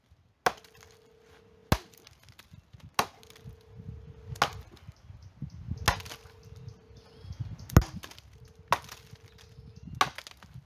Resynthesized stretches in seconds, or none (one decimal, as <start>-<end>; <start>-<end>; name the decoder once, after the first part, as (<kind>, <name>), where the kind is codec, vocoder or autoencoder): none